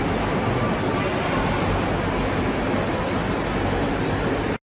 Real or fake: real